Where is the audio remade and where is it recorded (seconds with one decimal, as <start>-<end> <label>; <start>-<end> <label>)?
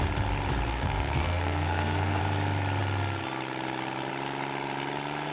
0.0-0.7 recorded; 0.7-2.2 remade; 2.2-5.3 recorded